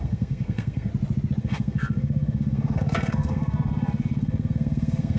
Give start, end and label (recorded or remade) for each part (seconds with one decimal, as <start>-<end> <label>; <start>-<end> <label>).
0.0-0.9 remade; 0.9-1.4 recorded; 1.4-5.2 remade